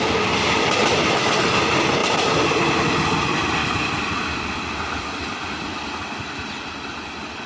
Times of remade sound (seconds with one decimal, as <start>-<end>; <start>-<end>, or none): 2.0-2.5; 3.6-5.9